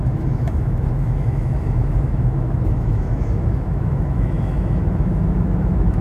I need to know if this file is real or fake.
fake